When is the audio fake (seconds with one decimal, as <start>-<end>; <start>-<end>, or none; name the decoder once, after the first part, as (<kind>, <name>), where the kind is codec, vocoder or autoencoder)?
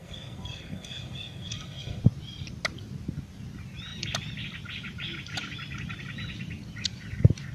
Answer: 0.0-2.0 (codec, SNAC)